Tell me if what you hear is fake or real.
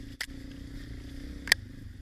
real